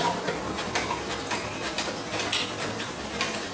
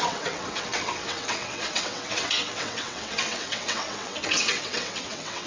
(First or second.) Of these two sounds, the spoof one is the second